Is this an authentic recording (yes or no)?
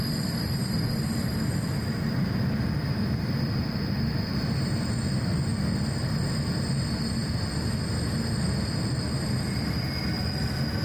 yes